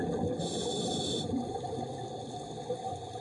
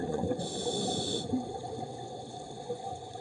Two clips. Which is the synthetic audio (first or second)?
second